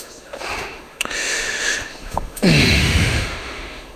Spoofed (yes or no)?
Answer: yes